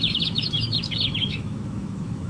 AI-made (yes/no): yes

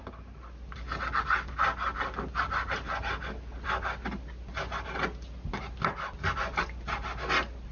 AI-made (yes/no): no